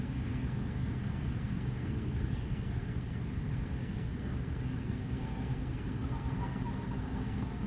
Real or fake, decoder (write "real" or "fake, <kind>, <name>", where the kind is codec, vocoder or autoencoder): fake, codec, SNAC